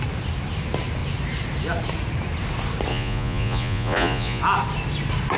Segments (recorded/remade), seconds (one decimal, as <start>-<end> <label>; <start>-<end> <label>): 0.0-2.9 recorded; 2.9-4.4 remade; 4.4-5.4 recorded